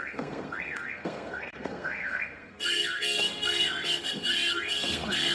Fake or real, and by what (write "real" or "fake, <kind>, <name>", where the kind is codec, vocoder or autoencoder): fake, codec, SNAC